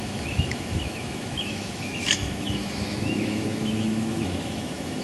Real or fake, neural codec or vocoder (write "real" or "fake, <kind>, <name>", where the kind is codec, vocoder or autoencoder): fake, autoencoder, DAC-VAE